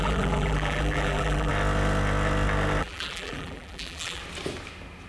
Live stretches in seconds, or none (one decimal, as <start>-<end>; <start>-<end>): 1.5-2.8; 4.2-5.1